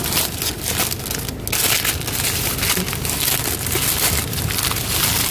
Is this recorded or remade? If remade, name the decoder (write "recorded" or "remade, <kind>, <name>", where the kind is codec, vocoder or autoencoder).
recorded